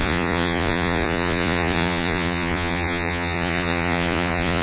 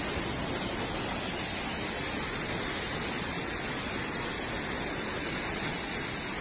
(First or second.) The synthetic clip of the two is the first